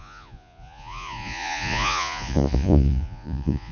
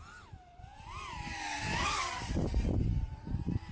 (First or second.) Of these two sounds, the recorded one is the second